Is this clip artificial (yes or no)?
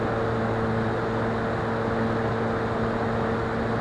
no